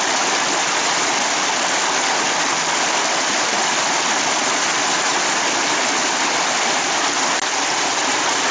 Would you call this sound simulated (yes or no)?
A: no